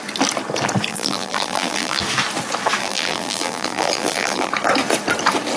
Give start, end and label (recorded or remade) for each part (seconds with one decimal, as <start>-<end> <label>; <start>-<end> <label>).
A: 0.0-0.9 recorded; 0.9-2.0 remade; 2.0-2.8 recorded; 2.8-4.5 remade; 4.5-5.6 recorded